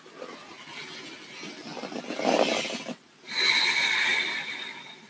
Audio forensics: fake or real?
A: real